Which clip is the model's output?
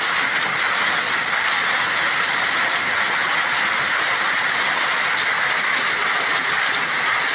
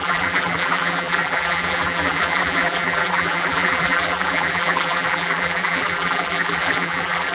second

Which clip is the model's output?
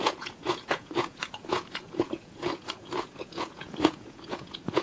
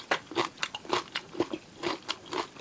first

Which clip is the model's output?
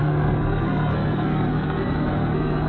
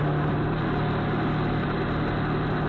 first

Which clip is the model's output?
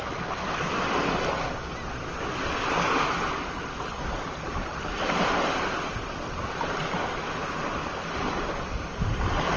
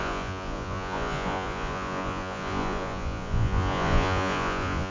second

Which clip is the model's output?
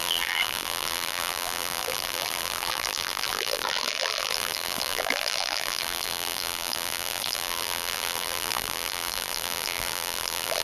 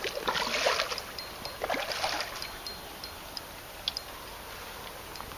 first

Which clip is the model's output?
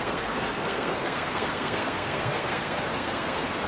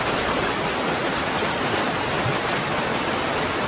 first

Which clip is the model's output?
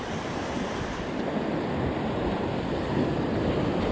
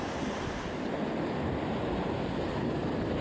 first